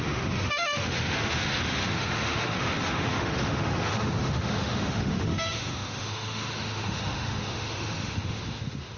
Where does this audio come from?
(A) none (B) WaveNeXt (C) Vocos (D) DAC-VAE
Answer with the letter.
D